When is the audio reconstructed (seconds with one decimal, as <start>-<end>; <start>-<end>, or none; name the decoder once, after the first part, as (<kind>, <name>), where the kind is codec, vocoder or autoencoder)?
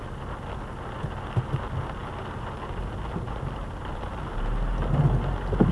none